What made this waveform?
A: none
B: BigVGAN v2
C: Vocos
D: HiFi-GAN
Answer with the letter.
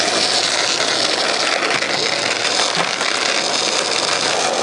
A